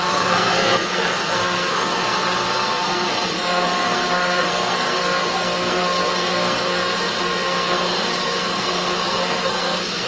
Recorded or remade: remade